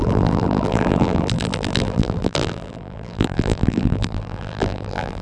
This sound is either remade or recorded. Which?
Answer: remade